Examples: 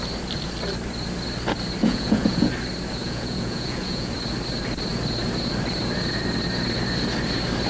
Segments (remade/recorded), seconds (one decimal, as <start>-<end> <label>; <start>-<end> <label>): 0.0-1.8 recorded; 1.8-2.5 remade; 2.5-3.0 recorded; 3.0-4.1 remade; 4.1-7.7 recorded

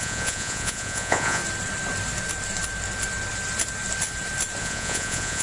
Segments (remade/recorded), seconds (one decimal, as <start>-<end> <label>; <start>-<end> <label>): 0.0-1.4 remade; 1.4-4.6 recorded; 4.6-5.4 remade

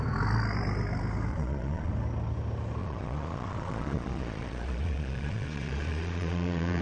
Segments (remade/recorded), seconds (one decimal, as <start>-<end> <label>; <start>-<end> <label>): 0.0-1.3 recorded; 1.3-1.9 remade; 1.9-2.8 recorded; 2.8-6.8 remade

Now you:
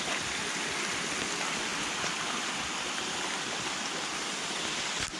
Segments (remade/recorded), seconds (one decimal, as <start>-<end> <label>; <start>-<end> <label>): 0.0-5.2 recorded

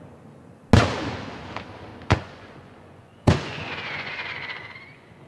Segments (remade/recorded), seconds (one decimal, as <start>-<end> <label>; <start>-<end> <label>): 0.0-1.9 recorded; 1.9-5.3 remade

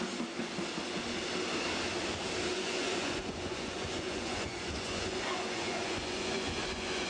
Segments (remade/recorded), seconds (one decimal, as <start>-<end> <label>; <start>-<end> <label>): 0.0-2.5 recorded; 2.5-7.1 remade

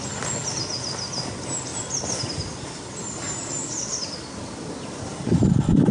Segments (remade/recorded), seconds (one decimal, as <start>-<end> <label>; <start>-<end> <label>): 0.0-5.9 recorded

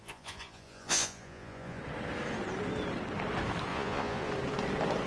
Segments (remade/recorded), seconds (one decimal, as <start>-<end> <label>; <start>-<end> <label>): 0.0-1.8 remade; 1.8-3.7 recorded; 3.7-4.3 remade; 4.3-5.1 recorded